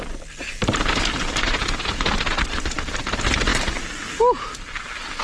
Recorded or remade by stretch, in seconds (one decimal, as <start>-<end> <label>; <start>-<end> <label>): 0.0-1.6 recorded; 1.6-2.1 remade; 2.1-5.2 recorded